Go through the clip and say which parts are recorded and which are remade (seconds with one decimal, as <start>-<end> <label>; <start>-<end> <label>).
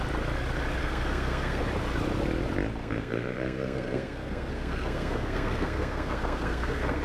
0.0-0.8 recorded; 0.8-1.6 remade; 1.6-2.8 recorded; 2.8-7.0 remade